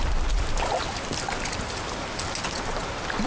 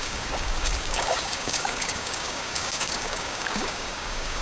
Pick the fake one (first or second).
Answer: second